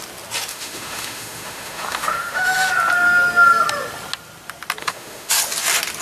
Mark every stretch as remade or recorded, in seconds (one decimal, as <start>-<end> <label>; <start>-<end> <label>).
0.0-0.5 recorded; 0.5-2.7 remade; 2.7-4.8 recorded; 4.8-5.3 remade; 5.3-6.0 recorded